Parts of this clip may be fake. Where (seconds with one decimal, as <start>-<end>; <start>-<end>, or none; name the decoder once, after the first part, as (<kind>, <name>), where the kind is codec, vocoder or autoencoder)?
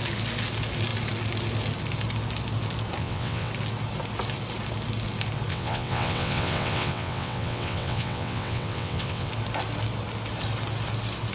3.0-3.5 (vocoder, WaveNeXt); 5.5-9.3